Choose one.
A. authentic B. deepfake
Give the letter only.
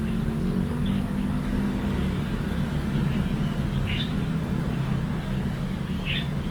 B